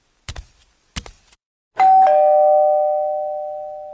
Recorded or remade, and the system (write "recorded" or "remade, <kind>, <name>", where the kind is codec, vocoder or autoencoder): recorded